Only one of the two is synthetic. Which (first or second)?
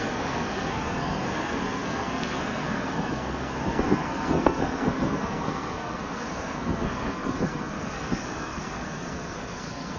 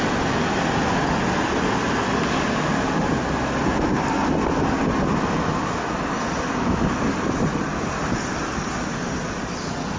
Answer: first